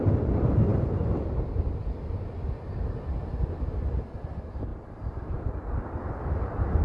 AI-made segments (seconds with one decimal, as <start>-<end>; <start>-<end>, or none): 0.0-6.8